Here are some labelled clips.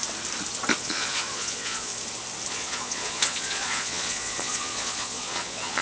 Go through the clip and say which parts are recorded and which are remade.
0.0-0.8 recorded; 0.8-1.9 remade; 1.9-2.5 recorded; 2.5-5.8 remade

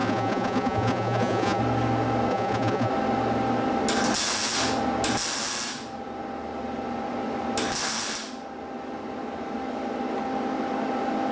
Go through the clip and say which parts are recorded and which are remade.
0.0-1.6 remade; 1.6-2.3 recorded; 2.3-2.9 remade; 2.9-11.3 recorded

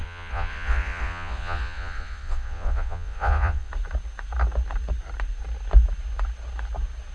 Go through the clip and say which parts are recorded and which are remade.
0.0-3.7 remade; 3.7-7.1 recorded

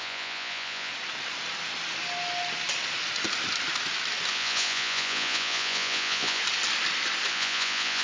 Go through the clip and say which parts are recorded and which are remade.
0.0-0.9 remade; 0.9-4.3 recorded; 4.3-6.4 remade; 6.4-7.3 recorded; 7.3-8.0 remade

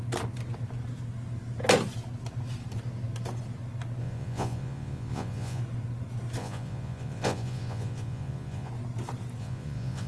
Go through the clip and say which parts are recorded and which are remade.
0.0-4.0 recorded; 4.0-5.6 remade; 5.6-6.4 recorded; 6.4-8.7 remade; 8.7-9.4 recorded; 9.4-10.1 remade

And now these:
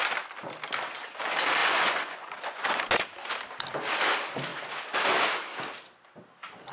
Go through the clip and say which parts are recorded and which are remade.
0.0-1.6 recorded; 1.6-2.8 remade; 2.8-6.7 recorded